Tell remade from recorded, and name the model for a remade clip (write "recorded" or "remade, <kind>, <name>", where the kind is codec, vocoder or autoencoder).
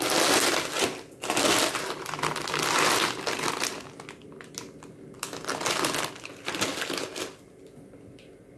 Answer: recorded